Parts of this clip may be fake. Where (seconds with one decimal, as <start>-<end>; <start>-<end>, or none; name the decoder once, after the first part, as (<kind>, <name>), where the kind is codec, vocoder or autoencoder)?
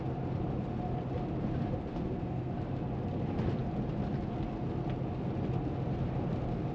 1.9-2.5 (codec, SNAC)